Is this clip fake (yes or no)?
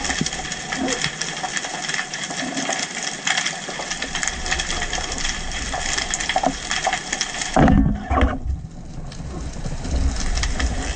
no